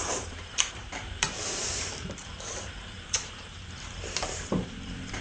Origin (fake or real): fake